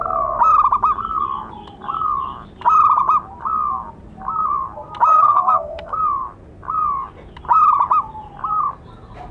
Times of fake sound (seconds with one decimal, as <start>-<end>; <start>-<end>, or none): 5.1-6.0